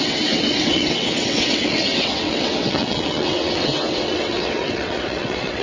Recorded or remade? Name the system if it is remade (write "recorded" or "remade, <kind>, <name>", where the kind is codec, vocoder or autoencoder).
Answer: remade, vocoder, WaveNeXt